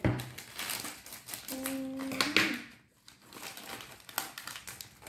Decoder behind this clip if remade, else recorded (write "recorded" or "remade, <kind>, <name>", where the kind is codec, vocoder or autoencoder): recorded